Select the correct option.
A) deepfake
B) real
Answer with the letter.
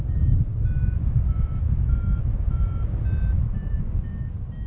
B